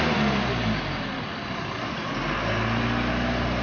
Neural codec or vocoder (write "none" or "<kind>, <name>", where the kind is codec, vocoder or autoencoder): none